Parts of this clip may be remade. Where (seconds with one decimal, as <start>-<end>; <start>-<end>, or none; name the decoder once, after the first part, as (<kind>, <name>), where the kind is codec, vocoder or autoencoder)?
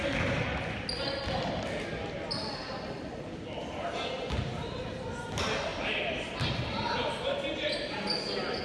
none